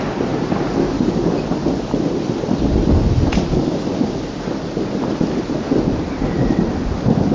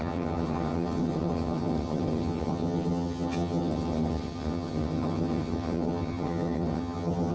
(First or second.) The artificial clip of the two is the second